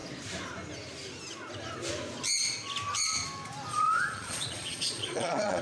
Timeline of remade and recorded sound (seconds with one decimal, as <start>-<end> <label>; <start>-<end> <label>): 0.0-3.7 recorded; 3.7-5.6 remade